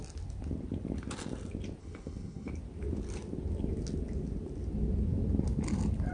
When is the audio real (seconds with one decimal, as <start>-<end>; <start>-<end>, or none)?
0.0-1.8; 2.5-6.1